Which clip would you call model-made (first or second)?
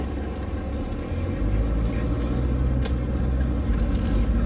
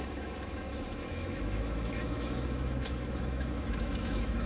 second